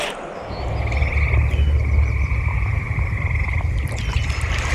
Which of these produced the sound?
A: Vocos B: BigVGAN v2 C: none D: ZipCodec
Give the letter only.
C